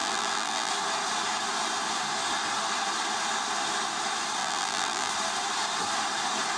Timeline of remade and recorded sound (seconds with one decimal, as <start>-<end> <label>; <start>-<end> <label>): 0.0-0.7 remade; 0.7-4.4 recorded; 4.4-5.1 remade; 5.1-6.6 recorded

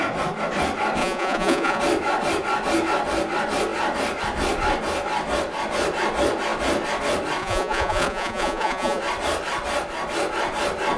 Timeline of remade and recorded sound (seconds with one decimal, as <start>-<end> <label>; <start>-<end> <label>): 0.0-1.0 recorded; 1.0-1.8 remade; 1.8-7.4 recorded; 7.4-9.0 remade; 9.0-11.0 recorded

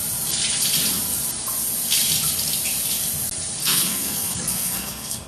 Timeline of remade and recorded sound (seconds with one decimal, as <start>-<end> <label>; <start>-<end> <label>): 0.0-3.6 recorded; 3.6-5.3 remade